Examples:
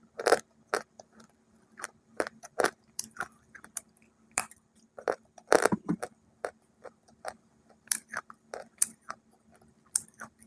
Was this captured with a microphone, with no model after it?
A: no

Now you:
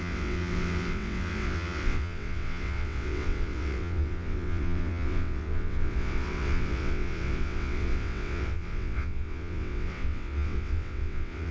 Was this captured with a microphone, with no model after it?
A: no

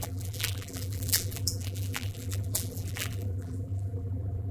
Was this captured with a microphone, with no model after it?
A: no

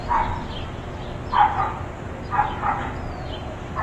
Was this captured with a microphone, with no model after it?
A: yes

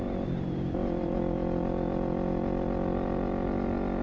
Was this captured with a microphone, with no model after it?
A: yes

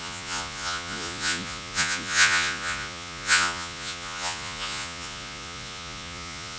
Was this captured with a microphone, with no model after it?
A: no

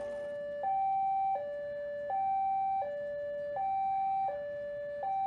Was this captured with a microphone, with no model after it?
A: yes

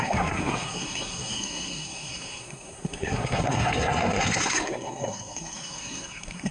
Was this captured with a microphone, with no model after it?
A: no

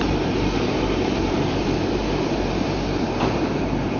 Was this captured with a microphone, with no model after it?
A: no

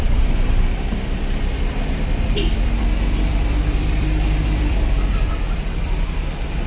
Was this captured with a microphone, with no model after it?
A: no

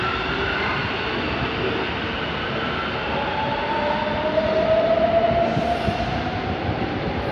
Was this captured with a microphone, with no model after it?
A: yes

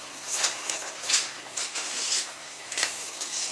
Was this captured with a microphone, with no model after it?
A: no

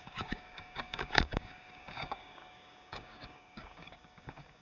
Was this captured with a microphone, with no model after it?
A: no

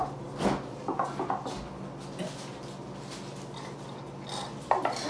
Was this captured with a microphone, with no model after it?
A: yes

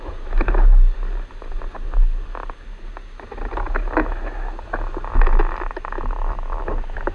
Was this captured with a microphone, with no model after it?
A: yes